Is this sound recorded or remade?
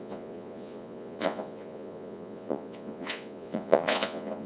remade